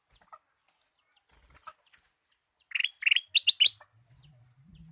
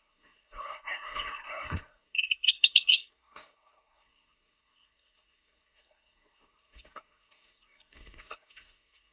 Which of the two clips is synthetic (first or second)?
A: second